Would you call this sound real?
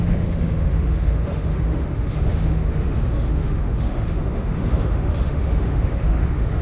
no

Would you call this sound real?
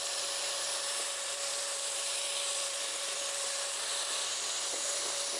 yes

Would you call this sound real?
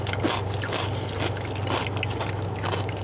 yes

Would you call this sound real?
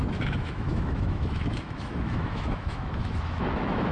no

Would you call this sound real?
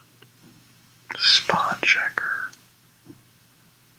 no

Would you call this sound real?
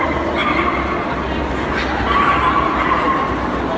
yes